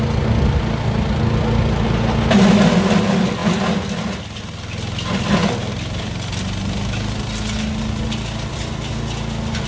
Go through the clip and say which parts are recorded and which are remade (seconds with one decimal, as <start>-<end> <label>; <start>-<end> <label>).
0.0-9.7 recorded